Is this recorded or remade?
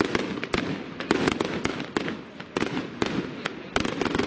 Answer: recorded